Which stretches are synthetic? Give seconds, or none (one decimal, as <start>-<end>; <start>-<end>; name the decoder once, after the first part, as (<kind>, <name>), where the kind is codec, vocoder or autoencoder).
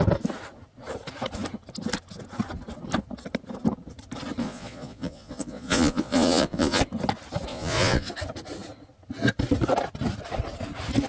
4.4-6.8 (vocoder, Vocos); 7.5-8.1